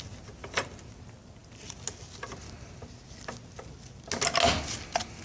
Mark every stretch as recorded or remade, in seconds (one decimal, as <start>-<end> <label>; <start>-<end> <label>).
0.0-5.2 recorded